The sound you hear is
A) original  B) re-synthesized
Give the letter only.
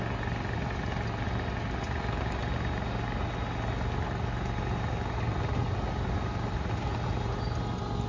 A